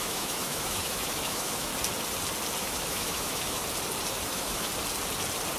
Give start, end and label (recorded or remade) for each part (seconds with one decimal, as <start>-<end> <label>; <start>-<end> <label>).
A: 0.0-1.7 remade; 1.7-2.6 recorded; 2.6-3.6 remade; 3.6-4.1 recorded; 4.1-4.7 remade; 4.7-5.6 recorded